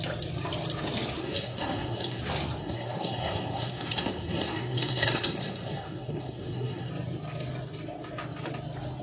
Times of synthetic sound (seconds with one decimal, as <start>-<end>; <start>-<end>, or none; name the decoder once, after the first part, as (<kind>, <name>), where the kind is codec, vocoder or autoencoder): 1.2-2.2 (codec, SNAC); 2.6-6.9